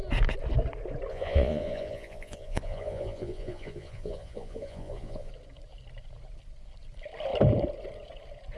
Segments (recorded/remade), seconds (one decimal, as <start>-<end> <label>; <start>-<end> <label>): 0.0-1.1 recorded; 1.1-5.3 remade; 5.3-8.6 recorded